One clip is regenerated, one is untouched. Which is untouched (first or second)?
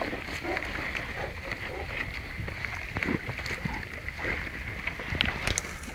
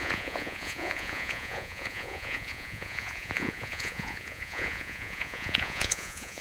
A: first